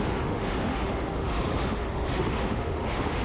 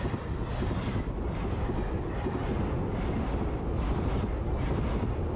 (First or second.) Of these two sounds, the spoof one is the first